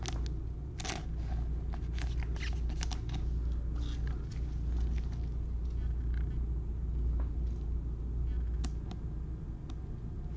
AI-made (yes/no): no